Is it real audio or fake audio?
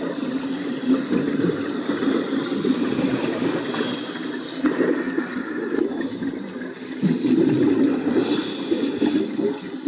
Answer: fake